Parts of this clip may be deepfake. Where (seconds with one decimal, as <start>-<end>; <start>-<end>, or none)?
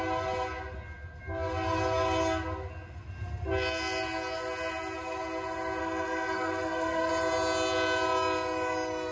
5.8-7.1